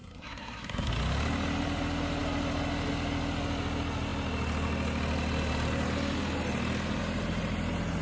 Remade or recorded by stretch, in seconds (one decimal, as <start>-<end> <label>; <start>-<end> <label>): 0.0-0.9 remade; 0.9-8.0 recorded